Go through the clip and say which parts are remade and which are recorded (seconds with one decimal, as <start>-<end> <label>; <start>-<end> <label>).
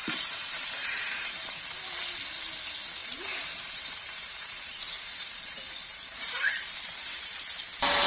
0.0-1.5 remade; 1.5-3.0 recorded; 3.0-7.4 remade; 7.4-8.1 recorded